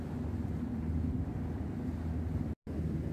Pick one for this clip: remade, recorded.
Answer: recorded